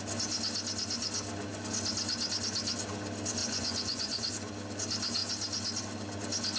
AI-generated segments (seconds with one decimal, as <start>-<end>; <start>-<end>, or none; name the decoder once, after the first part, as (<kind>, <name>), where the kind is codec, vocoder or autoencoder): 3.4-4.3 (vocoder, Vocos)